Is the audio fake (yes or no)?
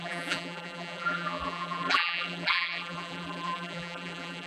yes